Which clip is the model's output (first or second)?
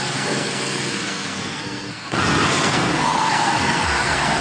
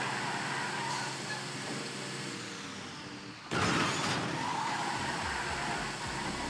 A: first